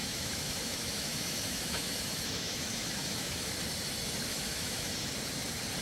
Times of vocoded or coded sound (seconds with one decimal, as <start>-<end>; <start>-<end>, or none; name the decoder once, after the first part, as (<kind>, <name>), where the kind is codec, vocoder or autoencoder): 0.0-3.5 (autoencoder, DAC-VAE); 4.3-5.1